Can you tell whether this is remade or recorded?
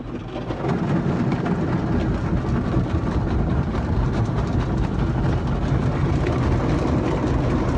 recorded